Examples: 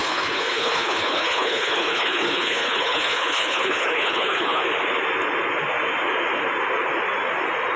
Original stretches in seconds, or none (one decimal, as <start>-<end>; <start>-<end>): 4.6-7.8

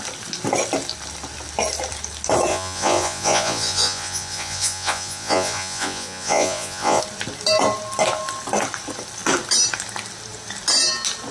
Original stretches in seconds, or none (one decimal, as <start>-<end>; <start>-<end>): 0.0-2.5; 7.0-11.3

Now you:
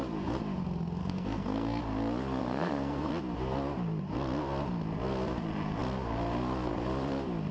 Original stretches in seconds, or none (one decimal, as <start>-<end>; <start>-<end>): 0.0-1.0; 1.8-2.4; 3.1-7.5

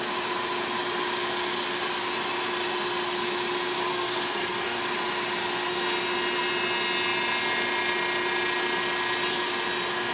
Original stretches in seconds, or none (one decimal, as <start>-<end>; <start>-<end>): 0.0-3.9; 4.8-10.1

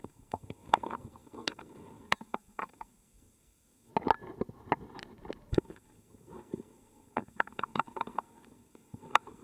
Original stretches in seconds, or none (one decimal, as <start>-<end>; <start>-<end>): 3.9-5.5